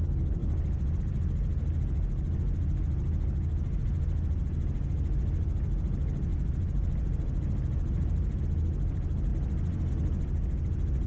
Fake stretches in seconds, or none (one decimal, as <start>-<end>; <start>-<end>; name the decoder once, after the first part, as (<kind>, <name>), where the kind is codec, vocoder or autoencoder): 6.3-8.4 (vocoder, BigVGAN v2)